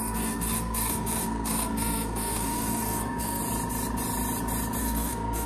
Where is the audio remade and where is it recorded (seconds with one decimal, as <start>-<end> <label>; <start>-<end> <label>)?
0.0-3.4 remade; 3.4-4.8 recorded; 4.8-5.5 remade